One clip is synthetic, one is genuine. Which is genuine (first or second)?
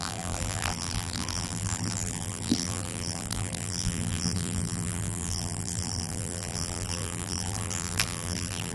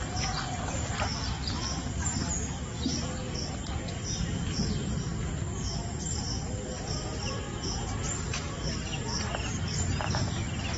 second